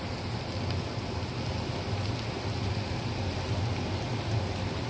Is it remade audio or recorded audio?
recorded